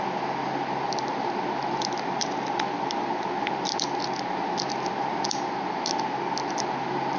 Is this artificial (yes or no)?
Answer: no